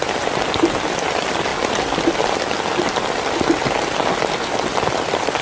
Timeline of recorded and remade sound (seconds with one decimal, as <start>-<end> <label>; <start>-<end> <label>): 0.0-5.4 recorded